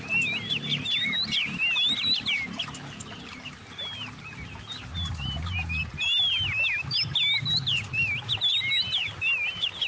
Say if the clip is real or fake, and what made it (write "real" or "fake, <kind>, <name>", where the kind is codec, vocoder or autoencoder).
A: real